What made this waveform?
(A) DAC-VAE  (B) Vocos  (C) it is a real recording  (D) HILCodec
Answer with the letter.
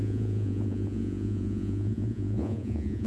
B